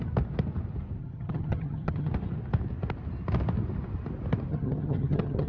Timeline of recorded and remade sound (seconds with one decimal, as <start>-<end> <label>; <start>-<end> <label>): 0.0-1.0 recorded; 1.0-2.1 remade; 2.1-4.5 recorded; 4.5-5.5 remade

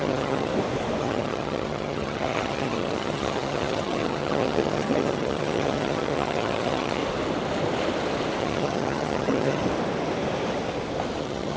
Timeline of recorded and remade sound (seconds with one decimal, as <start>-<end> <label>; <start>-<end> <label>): 0.0-0.5 remade; 0.5-1.0 recorded; 1.0-7.0 remade; 7.0-8.4 recorded; 8.4-9.6 remade; 9.6-11.2 recorded; 11.2-11.6 remade

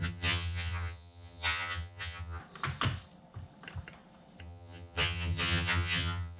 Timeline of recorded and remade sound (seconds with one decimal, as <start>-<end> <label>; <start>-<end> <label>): 0.0-2.4 remade; 2.4-4.4 recorded; 4.4-6.4 remade

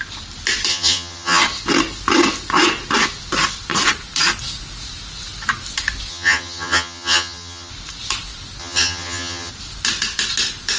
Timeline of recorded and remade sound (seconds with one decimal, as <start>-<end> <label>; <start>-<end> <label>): 0.0-0.7 recorded; 0.7-1.4 remade; 1.4-6.1 recorded; 6.1-7.7 remade; 7.7-8.6 recorded; 8.6-9.5 remade; 9.5-10.8 recorded

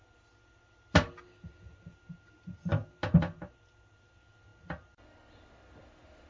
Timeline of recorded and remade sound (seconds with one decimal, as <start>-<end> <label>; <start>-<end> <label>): 0.0-6.3 recorded

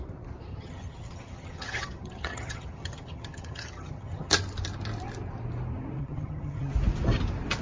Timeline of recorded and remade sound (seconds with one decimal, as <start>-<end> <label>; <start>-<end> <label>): 0.0-0.5 recorded; 0.5-4.3 remade; 4.3-6.0 recorded; 6.0-6.7 remade; 6.7-7.6 recorded